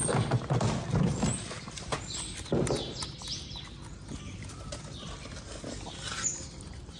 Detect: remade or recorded recorded